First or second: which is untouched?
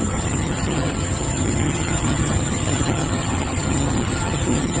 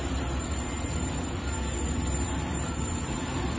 second